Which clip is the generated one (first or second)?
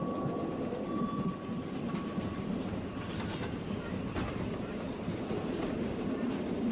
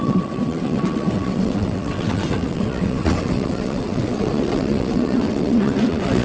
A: second